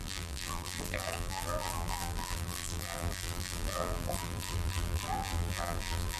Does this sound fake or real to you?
fake